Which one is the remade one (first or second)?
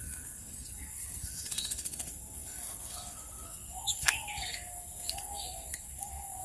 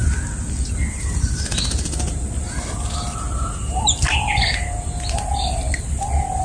first